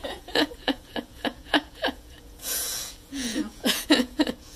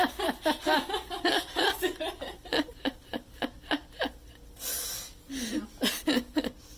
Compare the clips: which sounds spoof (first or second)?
first